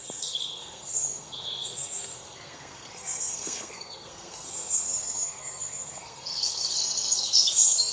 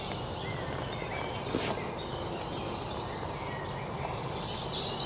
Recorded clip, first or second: second